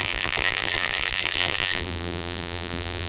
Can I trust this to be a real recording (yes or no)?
no